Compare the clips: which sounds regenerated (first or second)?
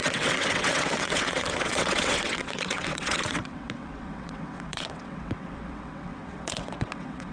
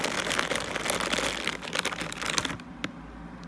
first